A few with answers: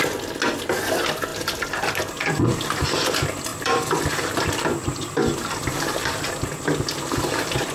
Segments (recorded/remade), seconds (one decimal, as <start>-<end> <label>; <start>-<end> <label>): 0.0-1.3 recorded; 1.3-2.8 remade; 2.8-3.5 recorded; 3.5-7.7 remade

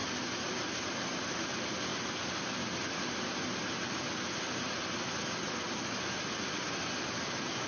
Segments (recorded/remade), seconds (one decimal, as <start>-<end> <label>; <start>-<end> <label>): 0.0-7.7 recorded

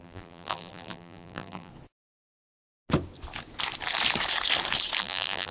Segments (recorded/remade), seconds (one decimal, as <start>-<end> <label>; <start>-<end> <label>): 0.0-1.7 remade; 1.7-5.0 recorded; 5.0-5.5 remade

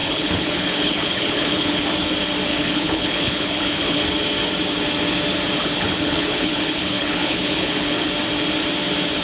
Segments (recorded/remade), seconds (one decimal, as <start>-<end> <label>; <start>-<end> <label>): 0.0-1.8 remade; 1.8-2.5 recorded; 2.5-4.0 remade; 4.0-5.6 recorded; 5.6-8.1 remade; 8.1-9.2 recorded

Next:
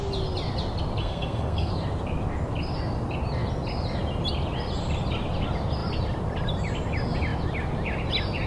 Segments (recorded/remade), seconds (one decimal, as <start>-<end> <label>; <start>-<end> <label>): 0.0-1.0 recorded; 1.0-1.7 remade; 1.7-8.5 recorded